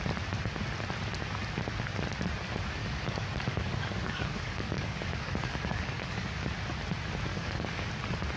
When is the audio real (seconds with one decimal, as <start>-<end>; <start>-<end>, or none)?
0.0-2.8; 6.5-7.3; 7.9-8.4